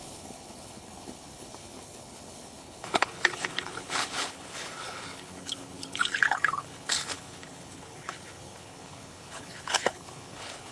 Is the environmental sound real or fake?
fake